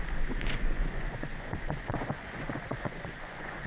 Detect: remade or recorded remade